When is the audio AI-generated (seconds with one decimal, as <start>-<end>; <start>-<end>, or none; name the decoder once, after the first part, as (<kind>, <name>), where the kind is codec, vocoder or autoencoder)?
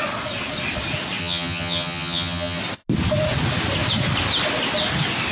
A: 1.2-2.6 (vocoder, HiFi-GAN)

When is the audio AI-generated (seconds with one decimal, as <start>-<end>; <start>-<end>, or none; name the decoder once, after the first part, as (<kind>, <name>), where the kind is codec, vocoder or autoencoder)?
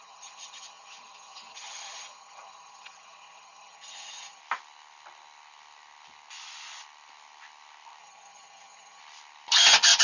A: 0.0-4.4 (vocoder, HiFi-GAN); 8.0-9.0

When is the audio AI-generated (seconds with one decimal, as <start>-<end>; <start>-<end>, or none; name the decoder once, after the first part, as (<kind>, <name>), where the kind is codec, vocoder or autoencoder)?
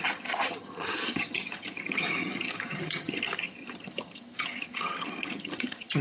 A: 0.0-6.0 (vocoder, HiFi-GAN)